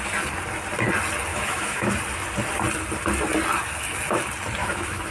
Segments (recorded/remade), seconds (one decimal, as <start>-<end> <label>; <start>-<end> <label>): 0.0-1.3 recorded; 1.3-1.9 remade; 1.9-4.6 recorded; 4.6-5.1 remade